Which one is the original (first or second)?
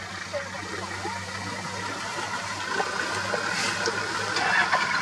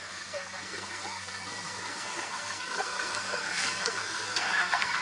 first